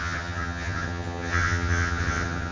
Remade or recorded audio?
remade